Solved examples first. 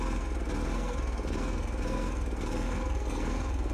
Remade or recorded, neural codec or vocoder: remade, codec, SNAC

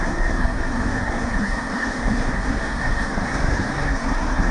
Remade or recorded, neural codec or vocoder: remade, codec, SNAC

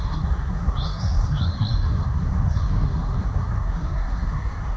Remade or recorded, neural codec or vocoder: remade, codec, SNAC